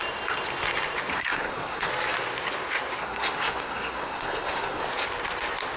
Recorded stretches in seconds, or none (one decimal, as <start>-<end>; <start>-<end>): 0.0-1.1; 1.9-3.0; 4.9-5.8